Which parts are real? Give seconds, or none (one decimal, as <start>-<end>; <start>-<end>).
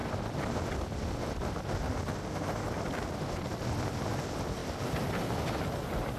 0.0-6.2